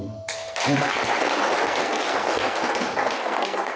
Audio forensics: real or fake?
fake